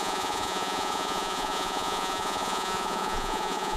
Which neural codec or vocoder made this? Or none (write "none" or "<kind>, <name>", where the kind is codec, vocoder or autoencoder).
vocoder, Vocos